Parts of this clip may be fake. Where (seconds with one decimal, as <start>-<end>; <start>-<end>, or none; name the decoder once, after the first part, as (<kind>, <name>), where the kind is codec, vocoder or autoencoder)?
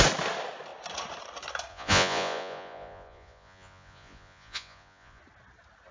1.7-5.2 (vocoder, Vocos)